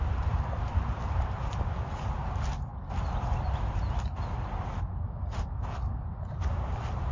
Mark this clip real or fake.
real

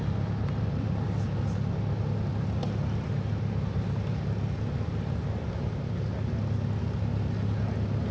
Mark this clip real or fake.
real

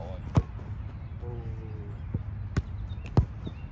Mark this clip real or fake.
real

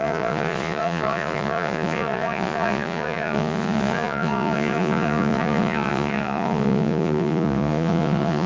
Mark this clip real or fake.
fake